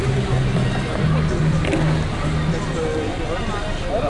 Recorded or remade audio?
recorded